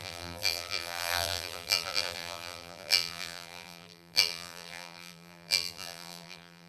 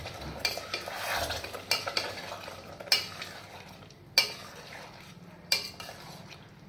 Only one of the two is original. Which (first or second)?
second